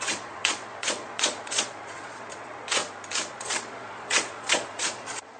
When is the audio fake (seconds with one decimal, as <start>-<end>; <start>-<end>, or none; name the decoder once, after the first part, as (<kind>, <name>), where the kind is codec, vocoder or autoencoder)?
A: 0.0-2.8 (vocoder, Vocos); 3.3-5.4